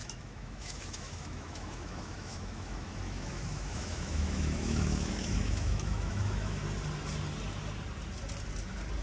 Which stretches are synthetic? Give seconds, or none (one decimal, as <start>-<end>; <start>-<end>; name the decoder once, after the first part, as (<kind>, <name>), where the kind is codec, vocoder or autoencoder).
0.0-6.6 (autoencoder, DAC-VAE)